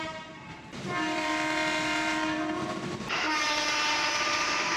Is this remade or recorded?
remade